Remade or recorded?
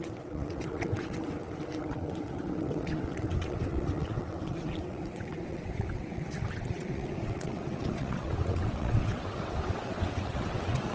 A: remade